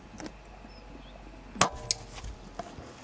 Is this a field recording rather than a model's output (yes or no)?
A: yes